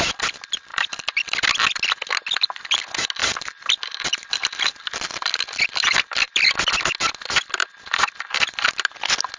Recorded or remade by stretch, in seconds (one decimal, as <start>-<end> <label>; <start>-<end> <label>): 0.0-0.7 recorded; 0.7-1.8 remade; 1.8-3.2 recorded; 3.2-6.5 remade; 6.5-9.4 recorded